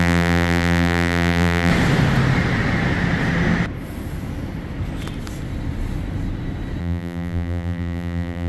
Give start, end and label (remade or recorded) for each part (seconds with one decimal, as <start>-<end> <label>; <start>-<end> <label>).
0.0-1.7 remade; 1.7-6.8 recorded; 6.8-8.5 remade